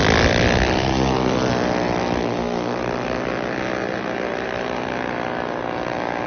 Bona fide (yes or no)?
yes